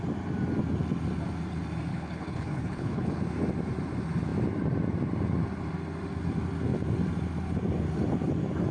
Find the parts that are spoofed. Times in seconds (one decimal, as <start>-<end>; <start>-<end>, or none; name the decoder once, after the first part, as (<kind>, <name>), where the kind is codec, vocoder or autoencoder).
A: 1.9-3.2 (codec, HILCodec)

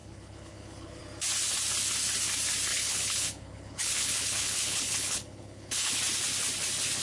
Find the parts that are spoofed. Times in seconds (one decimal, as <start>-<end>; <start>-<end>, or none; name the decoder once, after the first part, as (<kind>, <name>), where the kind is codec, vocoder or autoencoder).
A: 0.0-1.0 (codec, HILCodec); 2.7-6.0